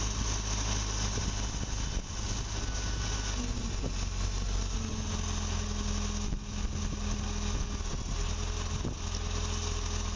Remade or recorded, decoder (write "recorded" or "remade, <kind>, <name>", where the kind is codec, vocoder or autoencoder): recorded